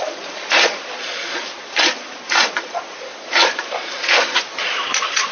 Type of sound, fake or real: fake